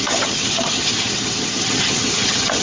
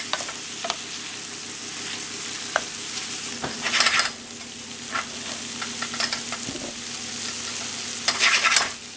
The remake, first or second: first